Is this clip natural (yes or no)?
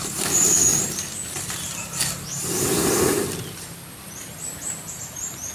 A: yes